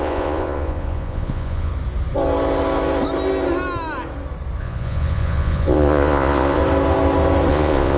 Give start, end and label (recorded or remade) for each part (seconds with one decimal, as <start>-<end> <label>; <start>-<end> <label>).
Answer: 0.0-1.7 remade; 1.7-4.6 recorded; 4.6-6.6 remade; 6.6-7.5 recorded; 7.5-8.0 remade